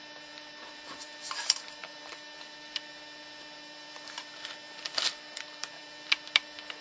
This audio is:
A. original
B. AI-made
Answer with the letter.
B